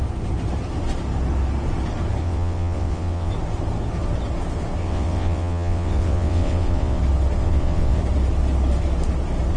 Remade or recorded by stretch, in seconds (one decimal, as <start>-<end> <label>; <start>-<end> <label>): 0.0-2.2 recorded; 2.2-3.3 remade; 3.3-4.8 recorded; 4.8-7.0 remade; 7.0-7.4 recorded; 7.4-8.0 remade; 8.0-9.6 recorded